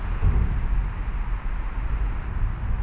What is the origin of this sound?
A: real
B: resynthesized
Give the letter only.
A